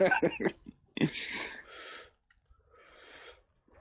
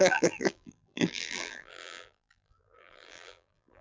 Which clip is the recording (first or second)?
first